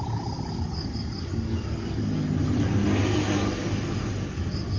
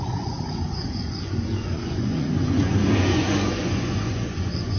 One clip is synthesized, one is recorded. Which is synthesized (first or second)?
second